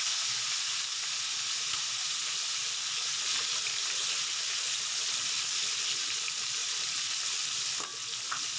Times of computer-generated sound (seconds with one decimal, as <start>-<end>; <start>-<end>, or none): 2.2-3.0; 6.6-7.1